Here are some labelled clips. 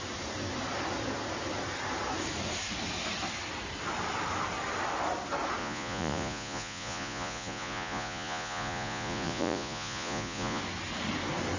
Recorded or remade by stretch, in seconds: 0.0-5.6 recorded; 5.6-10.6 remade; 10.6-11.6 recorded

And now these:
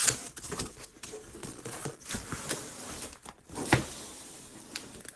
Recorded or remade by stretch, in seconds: 0.0-1.4 recorded; 1.4-2.0 remade; 2.0-5.2 recorded

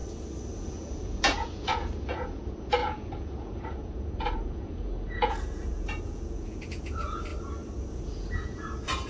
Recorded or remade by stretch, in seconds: 0.0-0.6 recorded; 0.6-7.3 remade; 7.3-7.8 recorded; 7.8-9.1 remade

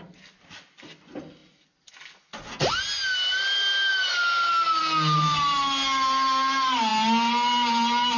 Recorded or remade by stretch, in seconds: 0.0-8.2 recorded

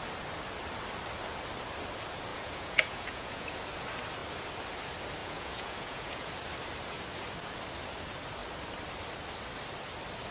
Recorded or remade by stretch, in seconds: 0.0-2.3 recorded; 2.3-3.6 remade; 3.6-5.2 recorded; 5.2-6.3 remade; 6.3-10.3 recorded

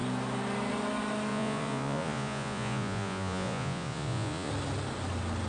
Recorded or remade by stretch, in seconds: 0.0-1.3 recorded; 1.3-4.5 remade; 4.5-5.5 recorded